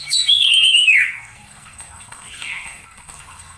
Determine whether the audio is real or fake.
fake